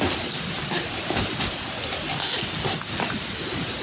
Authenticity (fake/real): real